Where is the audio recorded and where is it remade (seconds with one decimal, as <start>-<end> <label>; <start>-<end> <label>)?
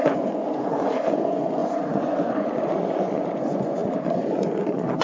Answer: 0.0-5.0 remade